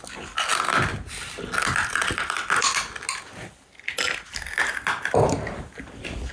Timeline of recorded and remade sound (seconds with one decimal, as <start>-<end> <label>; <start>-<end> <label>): 0.0-6.3 recorded